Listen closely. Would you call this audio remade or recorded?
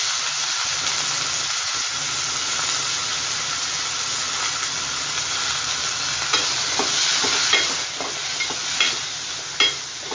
recorded